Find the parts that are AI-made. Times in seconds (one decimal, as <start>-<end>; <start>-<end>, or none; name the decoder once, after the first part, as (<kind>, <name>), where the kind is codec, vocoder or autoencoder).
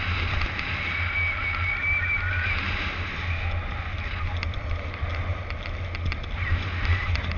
none